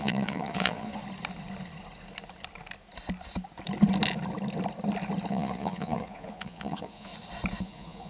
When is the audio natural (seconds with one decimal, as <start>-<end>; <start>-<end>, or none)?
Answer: 1.0-5.3; 7.1-7.6